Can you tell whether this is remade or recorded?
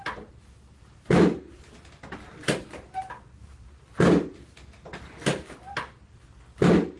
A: recorded